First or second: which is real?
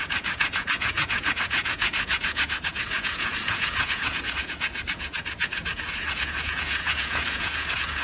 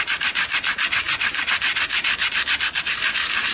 second